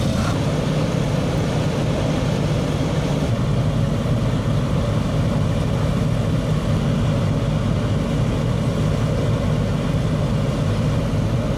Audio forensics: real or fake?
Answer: real